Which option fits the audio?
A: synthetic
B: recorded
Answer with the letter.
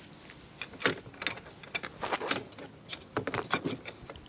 B